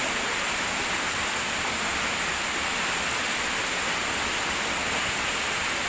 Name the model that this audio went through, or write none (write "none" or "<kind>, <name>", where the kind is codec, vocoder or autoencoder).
none